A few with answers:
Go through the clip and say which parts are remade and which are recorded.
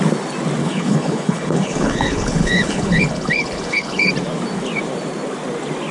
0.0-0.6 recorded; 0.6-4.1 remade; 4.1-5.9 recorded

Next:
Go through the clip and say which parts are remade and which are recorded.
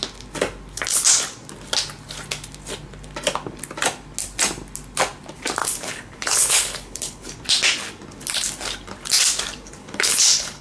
0.0-5.6 recorded; 5.6-7.3 remade; 7.3-9.8 recorded; 9.8-10.6 remade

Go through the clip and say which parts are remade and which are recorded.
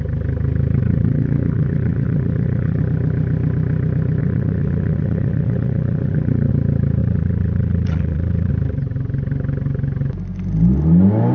0.0-0.8 recorded; 0.8-2.8 remade; 2.8-4.2 recorded; 4.2-6.5 remade; 6.5-7.0 recorded; 7.0-8.5 remade; 8.5-11.3 recorded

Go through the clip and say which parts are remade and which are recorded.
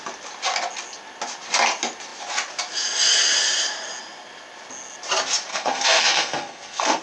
0.0-5.5 recorded; 5.5-7.0 remade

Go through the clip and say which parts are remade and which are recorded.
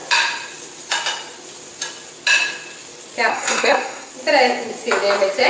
0.0-3.3 recorded; 3.3-4.1 remade; 4.1-5.5 recorded